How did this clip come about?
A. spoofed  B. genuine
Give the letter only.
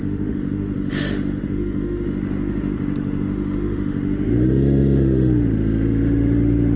A